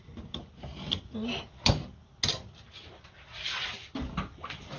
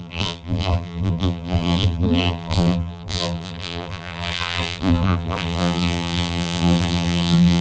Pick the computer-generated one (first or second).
second